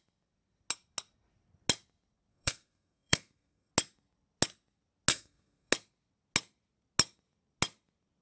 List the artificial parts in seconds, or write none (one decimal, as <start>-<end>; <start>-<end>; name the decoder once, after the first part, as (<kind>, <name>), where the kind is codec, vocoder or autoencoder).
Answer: 2.3-3.7 (codec, SNAC); 5.1-5.7